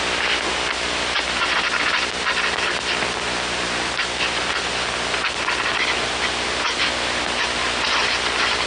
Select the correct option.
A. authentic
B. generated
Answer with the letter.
A